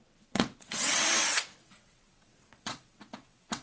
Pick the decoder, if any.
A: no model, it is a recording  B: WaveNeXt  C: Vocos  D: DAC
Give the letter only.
B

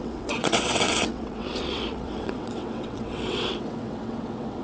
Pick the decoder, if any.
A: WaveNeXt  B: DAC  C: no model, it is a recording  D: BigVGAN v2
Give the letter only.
A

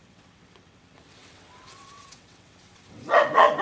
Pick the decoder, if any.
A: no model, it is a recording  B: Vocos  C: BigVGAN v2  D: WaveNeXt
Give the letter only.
D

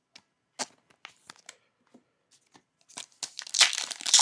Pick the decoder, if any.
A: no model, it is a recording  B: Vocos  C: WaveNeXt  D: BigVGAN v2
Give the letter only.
A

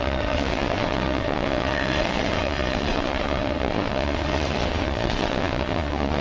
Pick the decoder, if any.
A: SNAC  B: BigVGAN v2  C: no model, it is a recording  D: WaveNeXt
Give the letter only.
D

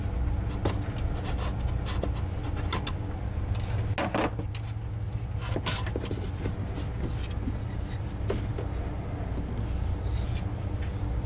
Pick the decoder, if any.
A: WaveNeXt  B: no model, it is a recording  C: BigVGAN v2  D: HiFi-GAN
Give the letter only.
B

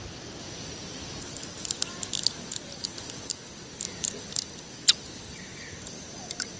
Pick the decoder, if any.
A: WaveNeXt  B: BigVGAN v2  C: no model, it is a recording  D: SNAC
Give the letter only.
C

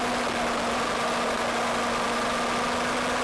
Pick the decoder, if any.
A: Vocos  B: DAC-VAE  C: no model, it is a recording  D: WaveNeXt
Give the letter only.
C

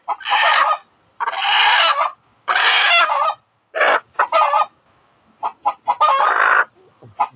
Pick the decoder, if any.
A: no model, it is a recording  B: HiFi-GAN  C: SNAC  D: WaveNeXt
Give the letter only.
A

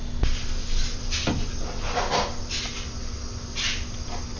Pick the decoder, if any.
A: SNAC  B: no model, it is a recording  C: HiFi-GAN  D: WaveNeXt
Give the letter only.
B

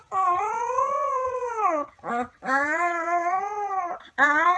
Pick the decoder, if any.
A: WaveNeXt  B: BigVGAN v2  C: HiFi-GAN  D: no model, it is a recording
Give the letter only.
A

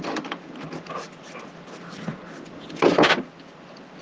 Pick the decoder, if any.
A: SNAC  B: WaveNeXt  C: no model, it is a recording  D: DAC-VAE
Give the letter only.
C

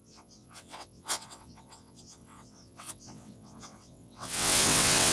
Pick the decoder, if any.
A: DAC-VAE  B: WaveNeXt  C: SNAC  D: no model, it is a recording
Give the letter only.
B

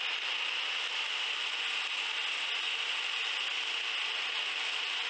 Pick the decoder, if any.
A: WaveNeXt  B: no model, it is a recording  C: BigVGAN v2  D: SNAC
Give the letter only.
B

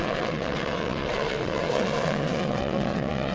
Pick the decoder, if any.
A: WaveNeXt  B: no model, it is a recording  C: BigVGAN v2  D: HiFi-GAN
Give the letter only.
A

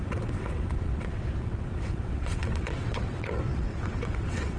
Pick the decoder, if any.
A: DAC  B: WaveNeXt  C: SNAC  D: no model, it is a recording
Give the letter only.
B